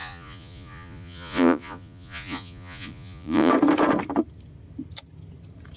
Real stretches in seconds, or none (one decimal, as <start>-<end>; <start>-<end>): 3.5-5.8